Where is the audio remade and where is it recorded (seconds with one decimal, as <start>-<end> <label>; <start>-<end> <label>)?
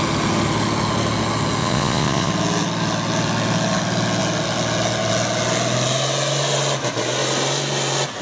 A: 0.0-1.6 recorded; 1.6-2.3 remade; 2.3-8.2 recorded